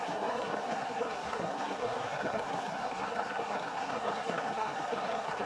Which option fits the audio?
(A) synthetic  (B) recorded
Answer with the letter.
A